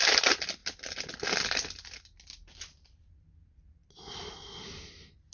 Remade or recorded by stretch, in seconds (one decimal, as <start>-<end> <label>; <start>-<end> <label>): 0.0-5.3 recorded